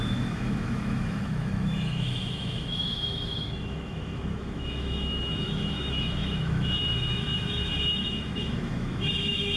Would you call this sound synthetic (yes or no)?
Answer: yes